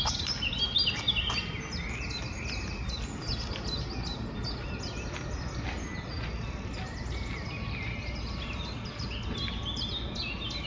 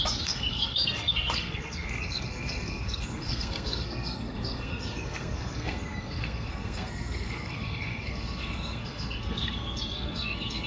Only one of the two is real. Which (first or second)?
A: first